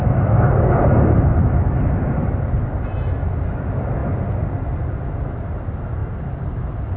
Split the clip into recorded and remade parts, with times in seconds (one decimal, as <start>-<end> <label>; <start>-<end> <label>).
0.0-0.5 remade; 0.5-7.0 recorded